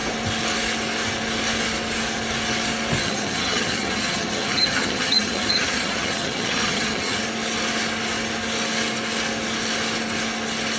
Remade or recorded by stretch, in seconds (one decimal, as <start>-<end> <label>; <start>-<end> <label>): 0.0-3.0 recorded; 3.0-7.2 remade; 7.2-10.8 recorded